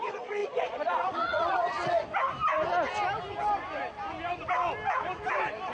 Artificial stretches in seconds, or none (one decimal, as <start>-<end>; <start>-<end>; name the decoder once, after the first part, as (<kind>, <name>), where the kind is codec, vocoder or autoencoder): 0.0-2.0 (vocoder, Vocos)